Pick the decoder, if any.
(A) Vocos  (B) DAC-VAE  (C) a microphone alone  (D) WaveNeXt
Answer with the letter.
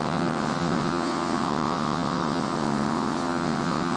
D